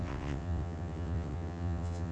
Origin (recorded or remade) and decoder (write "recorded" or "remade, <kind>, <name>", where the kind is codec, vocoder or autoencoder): remade, vocoder, WaveNeXt